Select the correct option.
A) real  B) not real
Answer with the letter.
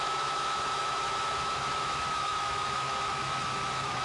B